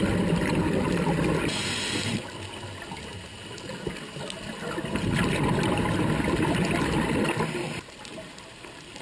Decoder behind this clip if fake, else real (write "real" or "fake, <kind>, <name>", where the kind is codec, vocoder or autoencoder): real